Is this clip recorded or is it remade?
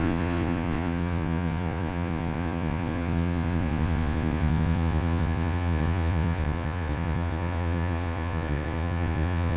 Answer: remade